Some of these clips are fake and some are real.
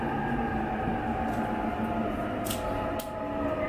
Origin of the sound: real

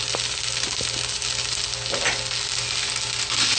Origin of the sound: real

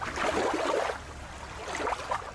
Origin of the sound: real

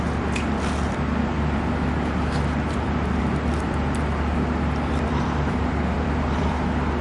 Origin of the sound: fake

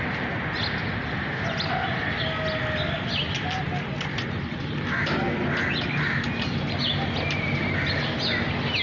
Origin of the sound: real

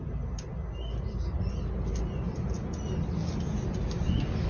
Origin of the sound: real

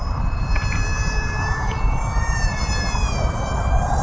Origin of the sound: fake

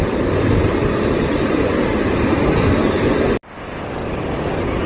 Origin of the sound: fake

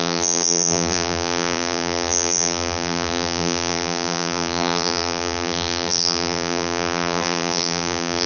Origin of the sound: fake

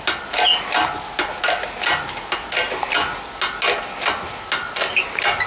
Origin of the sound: real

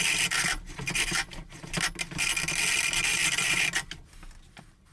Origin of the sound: real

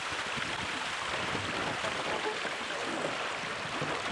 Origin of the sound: real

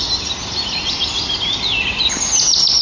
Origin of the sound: real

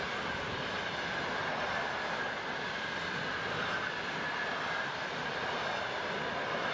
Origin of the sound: fake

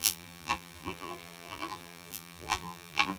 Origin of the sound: fake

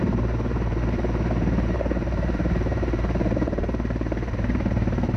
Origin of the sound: fake